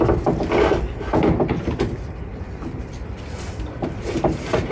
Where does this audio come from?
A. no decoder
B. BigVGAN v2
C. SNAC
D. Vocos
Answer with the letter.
A